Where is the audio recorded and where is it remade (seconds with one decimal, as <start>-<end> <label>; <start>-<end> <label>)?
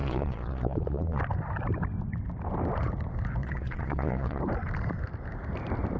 0.0-1.2 remade; 1.2-3.4 recorded; 3.4-4.4 remade; 4.4-6.0 recorded